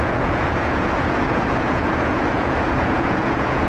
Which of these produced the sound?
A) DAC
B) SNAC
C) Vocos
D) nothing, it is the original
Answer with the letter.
C